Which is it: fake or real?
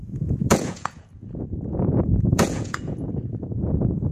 fake